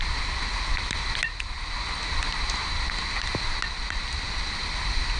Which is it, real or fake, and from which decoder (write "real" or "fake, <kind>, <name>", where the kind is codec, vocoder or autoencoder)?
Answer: real